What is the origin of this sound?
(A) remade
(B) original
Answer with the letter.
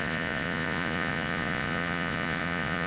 A